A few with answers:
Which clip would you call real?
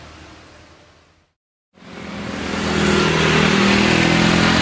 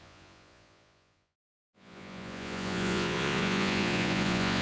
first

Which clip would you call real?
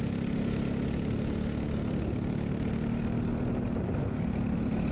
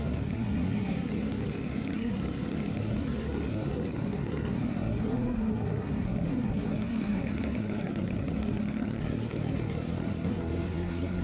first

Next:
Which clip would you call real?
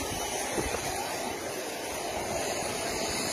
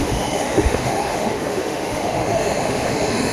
first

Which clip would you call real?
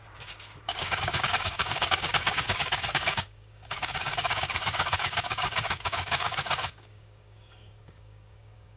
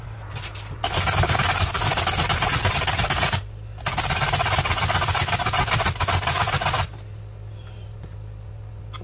second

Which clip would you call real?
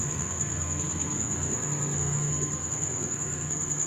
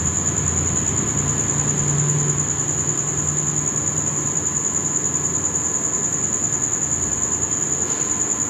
second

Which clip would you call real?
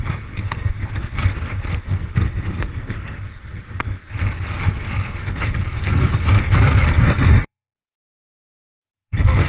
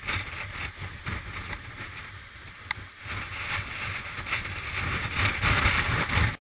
second